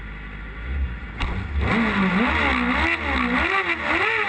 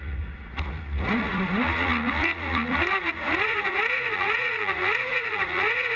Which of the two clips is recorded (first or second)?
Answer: first